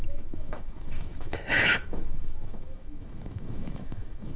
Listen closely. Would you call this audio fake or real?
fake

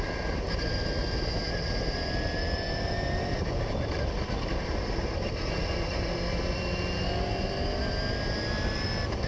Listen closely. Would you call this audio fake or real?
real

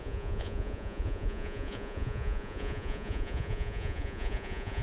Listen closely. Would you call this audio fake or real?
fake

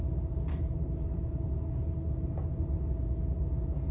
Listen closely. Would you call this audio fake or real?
real